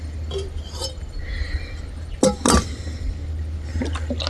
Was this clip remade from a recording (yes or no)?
no